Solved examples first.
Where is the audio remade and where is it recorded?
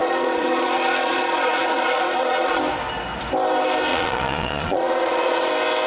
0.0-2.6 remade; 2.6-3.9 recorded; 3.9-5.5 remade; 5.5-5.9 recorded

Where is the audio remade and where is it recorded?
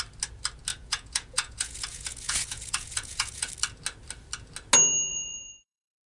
0.0-0.7 recorded; 0.7-3.5 remade; 3.5-5.1 recorded; 5.1-6.1 remade